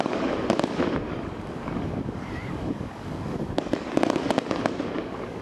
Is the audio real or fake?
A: fake